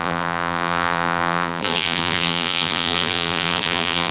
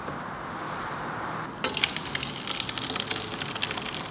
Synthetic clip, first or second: first